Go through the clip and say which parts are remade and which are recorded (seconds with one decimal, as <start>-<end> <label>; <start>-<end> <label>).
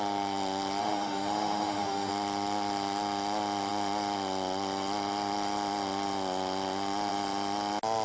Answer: 0.0-0.8 recorded; 0.8-2.1 remade; 2.1-8.0 recorded